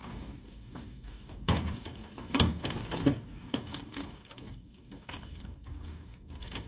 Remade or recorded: remade